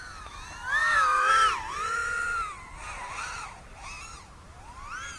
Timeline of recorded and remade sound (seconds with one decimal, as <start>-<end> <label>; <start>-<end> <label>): 0.0-0.8 recorded; 0.8-1.3 remade; 1.3-5.2 recorded